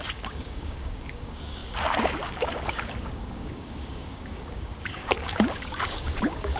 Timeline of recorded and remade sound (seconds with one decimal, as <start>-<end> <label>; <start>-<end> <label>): 0.0-6.6 remade